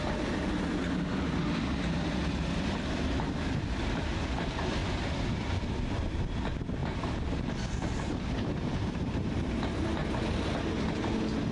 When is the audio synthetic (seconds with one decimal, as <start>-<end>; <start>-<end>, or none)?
none